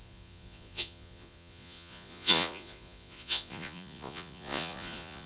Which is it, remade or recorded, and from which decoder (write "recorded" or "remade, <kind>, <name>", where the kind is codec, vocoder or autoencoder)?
remade, vocoder, Vocos